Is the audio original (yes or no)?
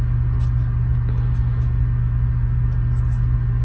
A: yes